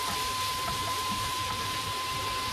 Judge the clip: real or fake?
fake